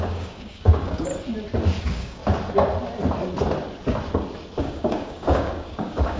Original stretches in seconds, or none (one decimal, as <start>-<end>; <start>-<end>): 1.1-1.8; 2.2-4.6